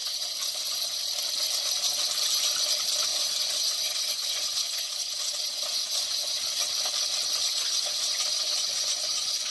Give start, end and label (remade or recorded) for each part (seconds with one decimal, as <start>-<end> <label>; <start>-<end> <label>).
0.0-1.0 remade; 1.0-3.1 recorded; 3.1-6.4 remade; 6.4-7.4 recorded; 7.4-9.5 remade